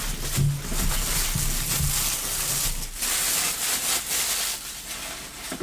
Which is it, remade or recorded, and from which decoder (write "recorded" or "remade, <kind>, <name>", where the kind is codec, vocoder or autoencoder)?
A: recorded